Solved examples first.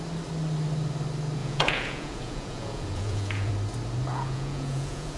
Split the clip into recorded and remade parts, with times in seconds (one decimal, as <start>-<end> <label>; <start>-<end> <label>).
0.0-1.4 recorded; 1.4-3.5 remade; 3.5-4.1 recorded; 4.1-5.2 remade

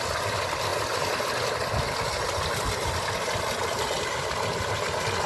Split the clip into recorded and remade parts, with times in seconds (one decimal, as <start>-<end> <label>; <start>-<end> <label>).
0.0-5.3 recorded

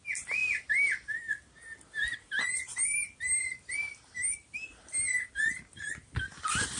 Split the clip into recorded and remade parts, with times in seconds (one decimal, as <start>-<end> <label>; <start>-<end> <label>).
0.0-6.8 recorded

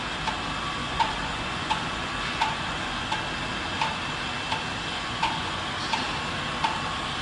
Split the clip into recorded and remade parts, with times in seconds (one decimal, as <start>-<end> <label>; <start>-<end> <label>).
0.0-0.8 recorded; 0.8-3.2 remade; 3.2-4.9 recorded; 4.9-5.6 remade; 5.6-7.2 recorded

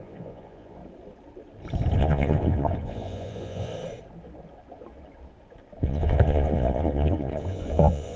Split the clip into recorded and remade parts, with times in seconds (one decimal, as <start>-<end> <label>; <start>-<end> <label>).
0.0-0.8 remade; 0.8-2.0 recorded; 2.0-3.7 remade; 3.7-5.8 recorded; 5.8-8.2 remade

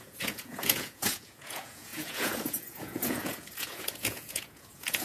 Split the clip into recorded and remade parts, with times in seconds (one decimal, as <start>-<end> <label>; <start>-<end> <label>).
0.0-5.0 remade

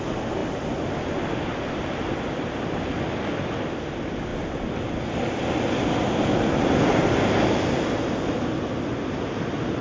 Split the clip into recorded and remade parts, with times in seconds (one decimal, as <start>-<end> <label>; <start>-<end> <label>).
0.0-9.8 recorded

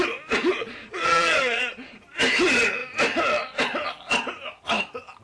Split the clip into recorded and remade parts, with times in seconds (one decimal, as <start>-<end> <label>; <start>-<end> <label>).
0.0-0.5 recorded; 0.5-2.0 remade; 2.0-5.2 recorded